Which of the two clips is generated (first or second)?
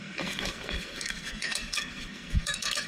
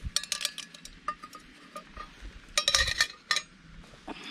first